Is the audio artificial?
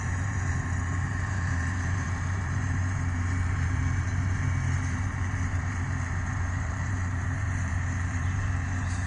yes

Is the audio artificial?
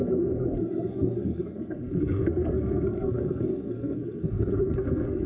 yes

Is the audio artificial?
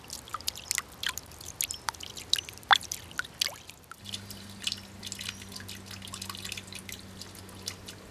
no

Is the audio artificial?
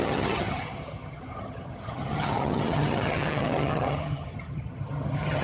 yes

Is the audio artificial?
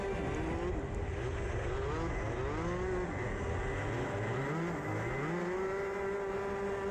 no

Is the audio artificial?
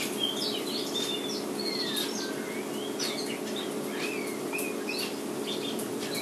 no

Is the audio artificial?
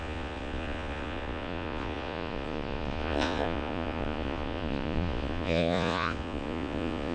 yes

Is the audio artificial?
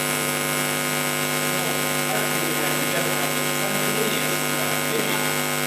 no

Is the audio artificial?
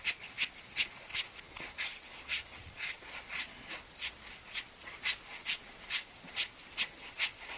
yes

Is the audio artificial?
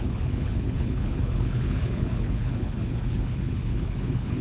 yes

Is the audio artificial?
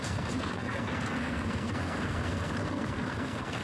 yes